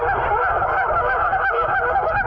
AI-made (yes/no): no